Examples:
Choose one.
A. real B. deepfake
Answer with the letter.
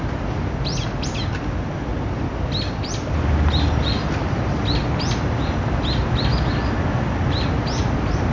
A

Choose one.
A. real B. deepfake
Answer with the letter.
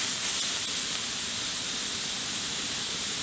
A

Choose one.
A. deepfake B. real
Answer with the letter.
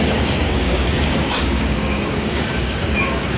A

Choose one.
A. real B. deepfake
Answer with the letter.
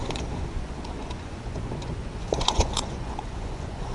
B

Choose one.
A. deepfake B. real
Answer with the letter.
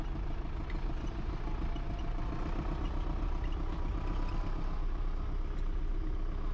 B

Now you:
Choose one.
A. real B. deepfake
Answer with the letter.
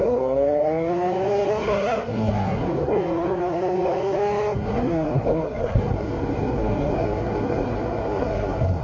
B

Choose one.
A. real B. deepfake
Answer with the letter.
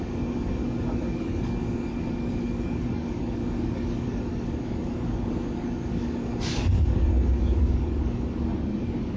B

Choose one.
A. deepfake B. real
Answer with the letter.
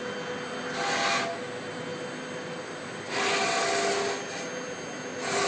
B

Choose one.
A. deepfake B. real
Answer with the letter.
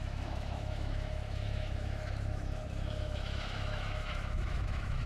A